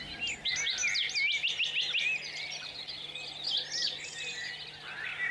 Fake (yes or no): no